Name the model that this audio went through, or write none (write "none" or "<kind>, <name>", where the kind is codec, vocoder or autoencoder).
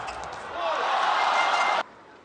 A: none